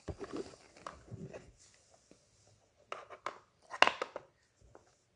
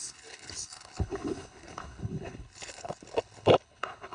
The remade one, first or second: second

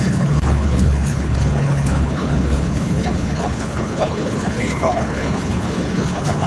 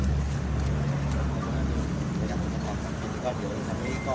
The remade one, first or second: first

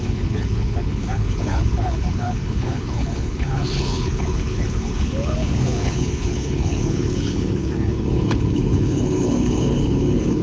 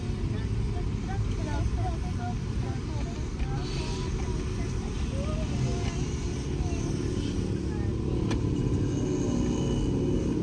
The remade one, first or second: first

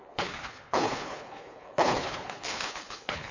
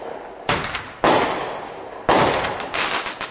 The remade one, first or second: first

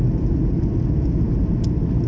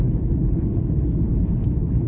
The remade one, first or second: second